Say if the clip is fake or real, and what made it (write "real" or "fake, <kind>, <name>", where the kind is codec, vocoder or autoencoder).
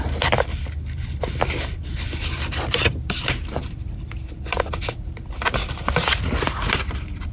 fake, vocoder, BigVGAN v2